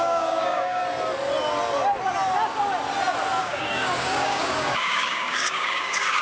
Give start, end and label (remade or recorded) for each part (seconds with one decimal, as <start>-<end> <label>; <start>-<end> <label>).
0.0-0.8 remade; 0.8-3.4 recorded; 3.4-6.2 remade